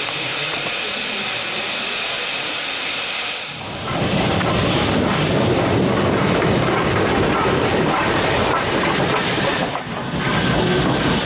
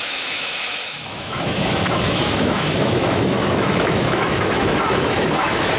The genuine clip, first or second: first